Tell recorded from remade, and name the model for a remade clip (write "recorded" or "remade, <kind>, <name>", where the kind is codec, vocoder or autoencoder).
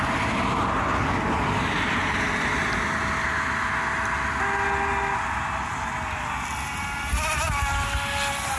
recorded